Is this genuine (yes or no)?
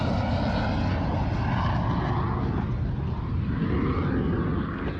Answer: yes